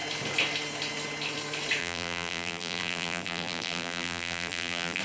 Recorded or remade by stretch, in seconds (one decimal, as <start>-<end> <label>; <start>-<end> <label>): 0.0-1.8 recorded; 1.8-5.0 remade